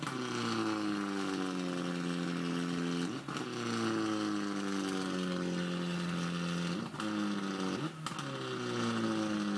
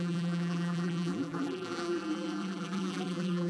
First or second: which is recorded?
first